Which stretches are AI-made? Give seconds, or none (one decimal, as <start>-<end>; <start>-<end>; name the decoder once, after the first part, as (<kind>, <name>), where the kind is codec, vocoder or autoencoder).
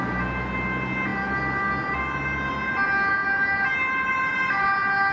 none